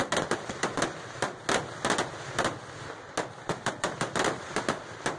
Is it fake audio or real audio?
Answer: real